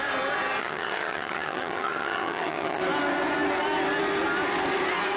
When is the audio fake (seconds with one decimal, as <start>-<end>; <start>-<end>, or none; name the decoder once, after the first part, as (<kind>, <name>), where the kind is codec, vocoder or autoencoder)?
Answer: 0.6-2.8 (vocoder, HiFi-GAN)